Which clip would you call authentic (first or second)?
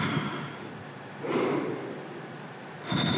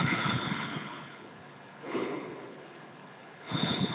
first